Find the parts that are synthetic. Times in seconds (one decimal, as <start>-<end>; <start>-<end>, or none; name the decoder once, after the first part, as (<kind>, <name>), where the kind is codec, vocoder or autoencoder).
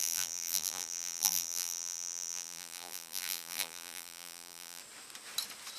0.0-4.8 (vocoder, BigVGAN v2)